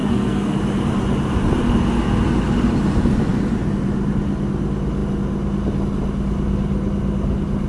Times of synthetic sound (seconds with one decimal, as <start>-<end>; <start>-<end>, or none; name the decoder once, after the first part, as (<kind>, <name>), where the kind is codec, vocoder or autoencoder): 0.0-0.6 (codec, SNAC)

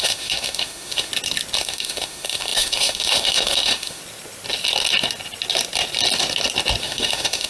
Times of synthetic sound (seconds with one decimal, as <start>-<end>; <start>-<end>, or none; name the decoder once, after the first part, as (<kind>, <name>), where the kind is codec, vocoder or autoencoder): 0.0-1.1 (autoencoder, DAC-VAE); 1.6-4.0; 6.8-7.5

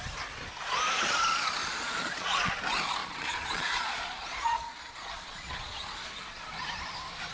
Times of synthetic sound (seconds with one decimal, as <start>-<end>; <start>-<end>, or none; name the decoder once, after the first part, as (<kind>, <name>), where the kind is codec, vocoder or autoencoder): 1.7-2.6 (vocoder, Vocos); 3.0-6.5

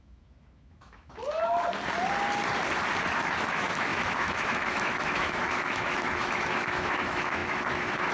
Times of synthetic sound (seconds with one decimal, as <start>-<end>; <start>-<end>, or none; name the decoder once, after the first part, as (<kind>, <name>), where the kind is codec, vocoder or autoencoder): 0.0-1.2 (autoencoder, DAC-VAE); 3.5-8.1

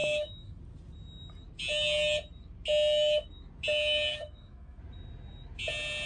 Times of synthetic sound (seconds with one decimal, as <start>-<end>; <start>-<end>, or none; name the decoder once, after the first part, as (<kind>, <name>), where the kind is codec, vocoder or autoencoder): 0.0-0.6 (autoencoder, DAC-VAE); 4.1-4.8